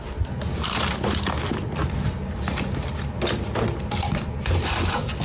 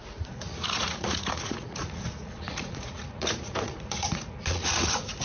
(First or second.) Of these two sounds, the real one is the first